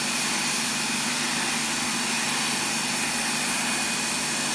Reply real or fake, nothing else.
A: real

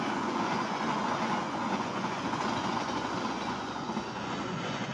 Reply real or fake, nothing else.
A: fake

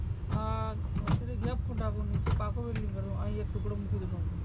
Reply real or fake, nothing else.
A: real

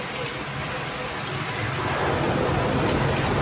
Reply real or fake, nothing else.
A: real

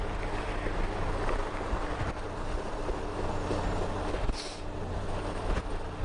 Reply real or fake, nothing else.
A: real